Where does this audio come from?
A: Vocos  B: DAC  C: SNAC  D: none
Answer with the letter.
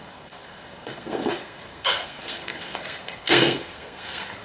C